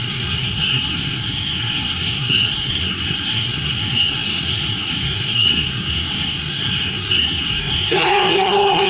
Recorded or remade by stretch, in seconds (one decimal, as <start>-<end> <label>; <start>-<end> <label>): 0.0-8.9 remade